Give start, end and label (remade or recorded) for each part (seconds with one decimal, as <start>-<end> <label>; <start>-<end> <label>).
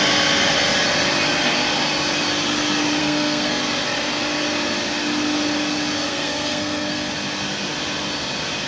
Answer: 0.0-3.0 recorded; 3.0-3.6 remade; 3.6-6.1 recorded; 6.1-7.1 remade; 7.1-8.7 recorded